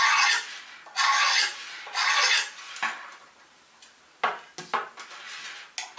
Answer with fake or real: real